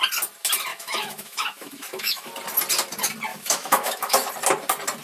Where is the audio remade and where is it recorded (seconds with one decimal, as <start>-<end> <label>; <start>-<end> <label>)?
0.0-0.7 recorded; 0.7-2.3 remade; 2.3-3.3 recorded; 3.3-4.3 remade; 4.3-5.0 recorded